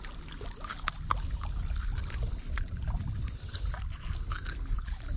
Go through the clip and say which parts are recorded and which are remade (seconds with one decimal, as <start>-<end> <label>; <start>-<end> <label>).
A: 0.0-5.2 recorded